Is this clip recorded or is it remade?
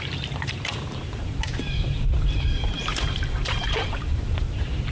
remade